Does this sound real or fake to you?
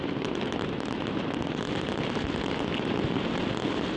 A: real